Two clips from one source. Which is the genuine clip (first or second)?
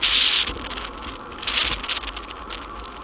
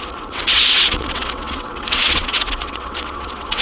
first